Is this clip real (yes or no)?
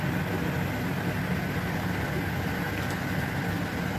yes